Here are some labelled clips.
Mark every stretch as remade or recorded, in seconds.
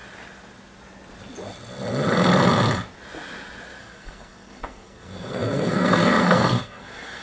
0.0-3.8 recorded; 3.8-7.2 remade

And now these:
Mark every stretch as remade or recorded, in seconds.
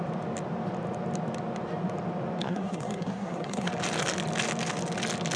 0.0-2.4 recorded; 2.4-3.7 remade; 3.7-5.4 recorded